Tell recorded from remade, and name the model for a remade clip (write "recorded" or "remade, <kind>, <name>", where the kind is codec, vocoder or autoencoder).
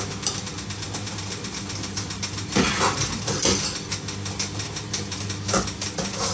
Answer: recorded